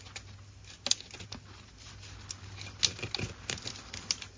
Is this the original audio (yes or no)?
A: yes